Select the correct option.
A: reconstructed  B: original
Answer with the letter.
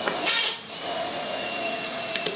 A